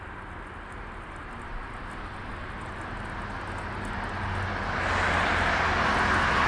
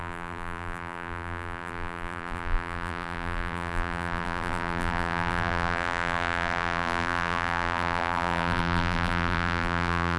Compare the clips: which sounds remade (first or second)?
second